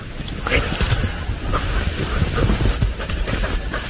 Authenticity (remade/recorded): recorded